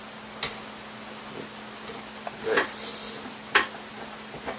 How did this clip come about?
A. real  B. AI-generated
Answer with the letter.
A